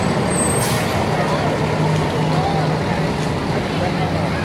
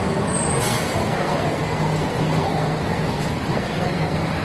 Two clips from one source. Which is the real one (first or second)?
first